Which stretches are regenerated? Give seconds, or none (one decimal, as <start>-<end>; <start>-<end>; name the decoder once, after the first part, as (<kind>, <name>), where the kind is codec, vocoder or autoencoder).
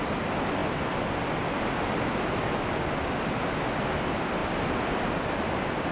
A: none